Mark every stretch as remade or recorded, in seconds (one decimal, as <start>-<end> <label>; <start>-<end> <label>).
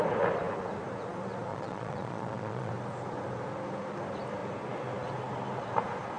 0.0-1.5 recorded; 1.5-2.7 remade; 2.7-6.2 recorded